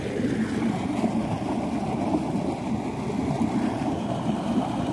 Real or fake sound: real